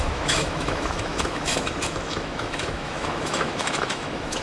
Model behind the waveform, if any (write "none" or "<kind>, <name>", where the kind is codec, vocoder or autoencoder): autoencoder, DAC-VAE